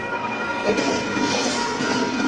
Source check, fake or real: fake